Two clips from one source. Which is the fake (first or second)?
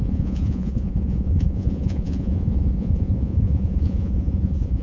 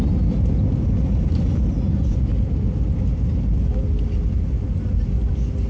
first